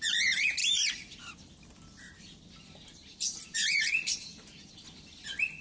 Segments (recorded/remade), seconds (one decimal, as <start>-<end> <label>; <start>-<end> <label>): 0.0-0.6 recorded; 0.6-1.2 remade; 1.2-3.1 recorded; 3.1-4.8 remade; 4.8-5.6 recorded